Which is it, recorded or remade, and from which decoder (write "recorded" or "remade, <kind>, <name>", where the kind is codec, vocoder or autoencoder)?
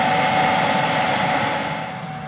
recorded